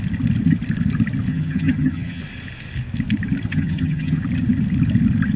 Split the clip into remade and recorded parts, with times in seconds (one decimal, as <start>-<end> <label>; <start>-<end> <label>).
0.0-1.3 recorded; 1.3-2.2 remade; 2.2-3.5 recorded; 3.5-4.2 remade; 4.2-5.4 recorded